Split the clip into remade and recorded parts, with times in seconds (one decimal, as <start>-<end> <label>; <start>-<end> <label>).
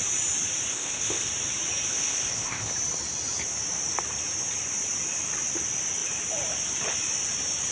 0.0-0.7 recorded; 0.7-1.3 remade; 1.3-1.9 recorded; 1.9-2.7 remade; 2.7-7.7 recorded